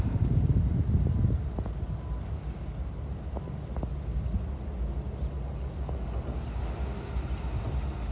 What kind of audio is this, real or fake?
real